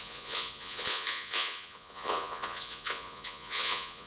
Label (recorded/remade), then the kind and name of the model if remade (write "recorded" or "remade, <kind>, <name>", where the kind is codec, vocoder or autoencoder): remade, vocoder, Vocos